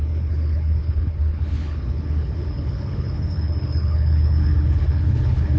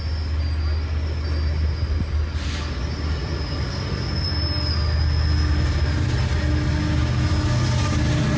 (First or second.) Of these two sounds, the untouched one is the second